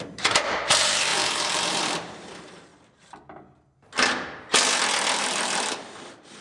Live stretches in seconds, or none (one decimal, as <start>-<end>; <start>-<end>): 2.7-5.2